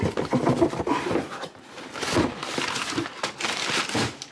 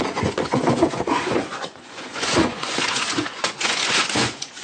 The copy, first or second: second